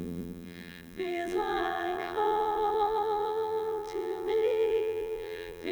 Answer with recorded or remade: remade